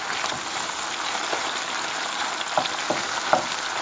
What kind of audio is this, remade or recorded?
recorded